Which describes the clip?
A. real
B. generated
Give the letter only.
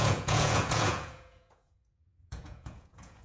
B